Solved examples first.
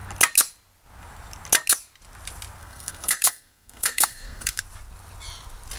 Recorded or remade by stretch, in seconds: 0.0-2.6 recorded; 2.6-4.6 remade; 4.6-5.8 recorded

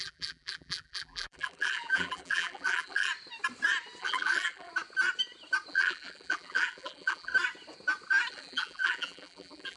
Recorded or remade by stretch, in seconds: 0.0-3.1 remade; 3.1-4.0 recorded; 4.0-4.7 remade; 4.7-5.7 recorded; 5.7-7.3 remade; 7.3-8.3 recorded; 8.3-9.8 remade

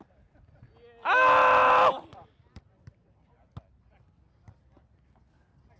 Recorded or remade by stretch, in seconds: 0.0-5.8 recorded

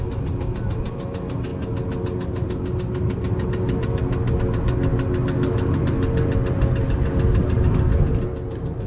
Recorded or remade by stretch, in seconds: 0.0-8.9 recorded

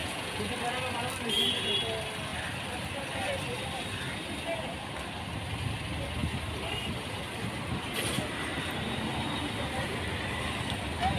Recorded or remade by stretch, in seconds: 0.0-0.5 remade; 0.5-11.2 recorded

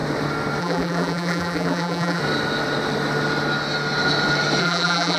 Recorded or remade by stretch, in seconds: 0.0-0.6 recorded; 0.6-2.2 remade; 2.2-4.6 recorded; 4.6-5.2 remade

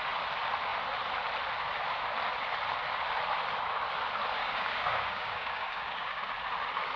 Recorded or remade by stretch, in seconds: 0.0-4.4 recorded; 4.4-6.3 remade; 6.3-7.0 recorded